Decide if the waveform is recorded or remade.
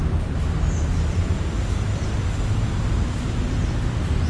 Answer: recorded